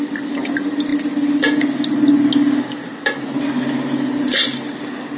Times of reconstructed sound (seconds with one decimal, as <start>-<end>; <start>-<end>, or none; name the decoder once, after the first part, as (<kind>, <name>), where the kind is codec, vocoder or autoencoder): none